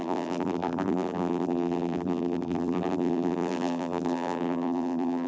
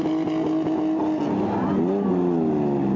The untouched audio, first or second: second